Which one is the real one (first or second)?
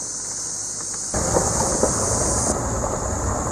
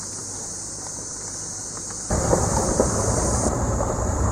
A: first